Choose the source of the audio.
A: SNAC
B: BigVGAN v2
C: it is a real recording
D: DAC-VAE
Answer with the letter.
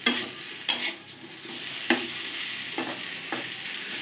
C